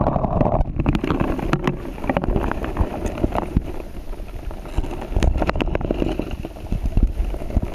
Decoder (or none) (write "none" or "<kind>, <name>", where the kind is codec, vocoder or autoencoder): none